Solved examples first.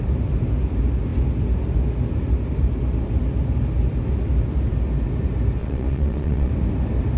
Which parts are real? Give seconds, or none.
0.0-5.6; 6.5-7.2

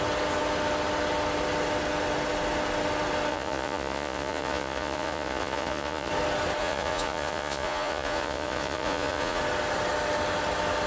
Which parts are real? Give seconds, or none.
0.0-3.3; 6.1-6.6; 9.4-10.9

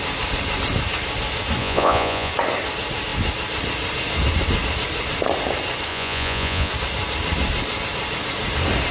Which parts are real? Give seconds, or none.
0.0-1.6; 2.3-5.9; 6.7-8.9

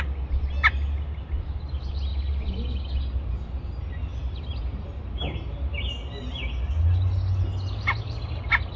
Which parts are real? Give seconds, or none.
0.0-8.8

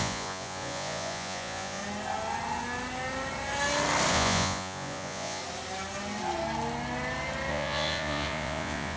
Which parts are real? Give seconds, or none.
1.8-4.1; 5.4-7.5